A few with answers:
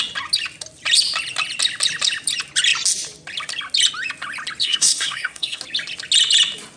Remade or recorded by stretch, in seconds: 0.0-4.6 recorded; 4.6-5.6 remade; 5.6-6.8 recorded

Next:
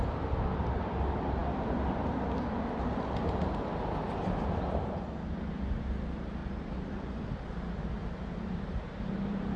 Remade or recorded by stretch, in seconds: 0.0-6.4 recorded; 6.4-7.4 remade; 7.4-8.0 recorded; 8.0-9.6 remade